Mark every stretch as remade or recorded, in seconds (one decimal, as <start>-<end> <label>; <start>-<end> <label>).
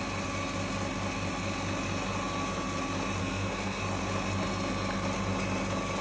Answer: 0.0-3.2 recorded; 3.2-3.8 remade; 3.8-6.0 recorded